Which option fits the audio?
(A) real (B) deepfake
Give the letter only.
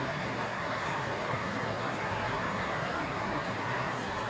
B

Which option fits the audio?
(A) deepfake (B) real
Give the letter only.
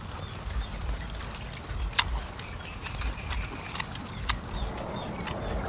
B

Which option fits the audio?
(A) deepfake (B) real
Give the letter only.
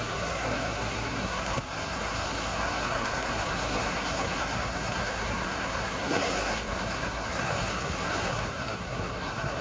A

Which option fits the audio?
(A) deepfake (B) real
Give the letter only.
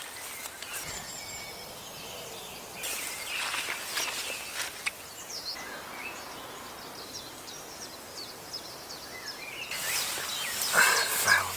B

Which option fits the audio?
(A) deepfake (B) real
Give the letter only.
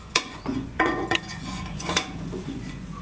A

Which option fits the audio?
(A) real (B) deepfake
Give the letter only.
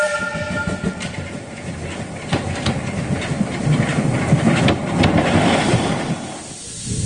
A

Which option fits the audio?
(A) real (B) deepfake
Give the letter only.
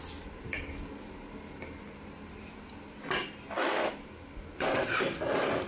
A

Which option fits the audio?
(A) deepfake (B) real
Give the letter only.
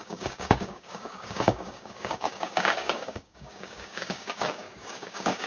A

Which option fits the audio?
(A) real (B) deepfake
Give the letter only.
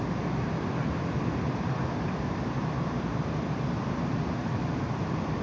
B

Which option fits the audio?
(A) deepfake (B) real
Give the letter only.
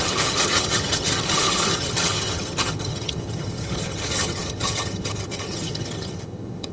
A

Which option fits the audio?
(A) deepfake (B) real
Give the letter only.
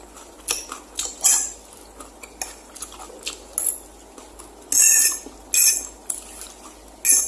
B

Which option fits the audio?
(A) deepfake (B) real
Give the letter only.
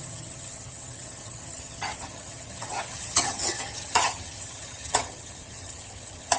A